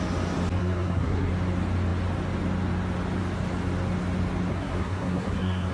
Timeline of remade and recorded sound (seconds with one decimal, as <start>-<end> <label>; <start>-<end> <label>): 0.0-0.6 recorded; 0.6-1.3 remade; 1.3-4.5 recorded; 4.5-5.7 remade

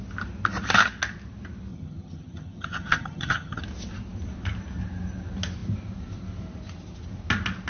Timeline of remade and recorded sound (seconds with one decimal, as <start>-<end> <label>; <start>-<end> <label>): 0.0-1.7 recorded; 1.7-3.6 remade; 3.6-7.7 recorded

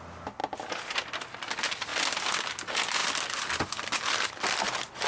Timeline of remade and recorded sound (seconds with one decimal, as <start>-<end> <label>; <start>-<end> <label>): 0.0-5.1 recorded